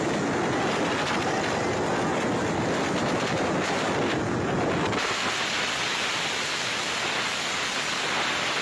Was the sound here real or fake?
real